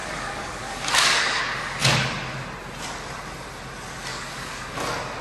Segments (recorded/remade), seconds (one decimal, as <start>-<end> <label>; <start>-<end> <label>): 0.0-1.4 remade; 1.4-4.1 recorded; 4.1-4.7 remade; 4.7-5.2 recorded